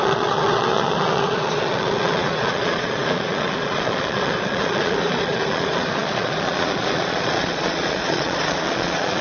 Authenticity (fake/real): fake